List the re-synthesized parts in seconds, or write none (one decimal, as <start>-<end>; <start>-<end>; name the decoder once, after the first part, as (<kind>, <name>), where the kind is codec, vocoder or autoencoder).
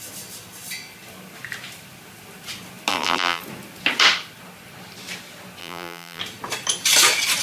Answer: 2.9-3.4 (vocoder, BigVGAN v2); 5.6-6.2